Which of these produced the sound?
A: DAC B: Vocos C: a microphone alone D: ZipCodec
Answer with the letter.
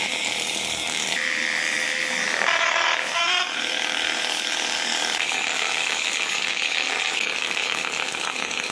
A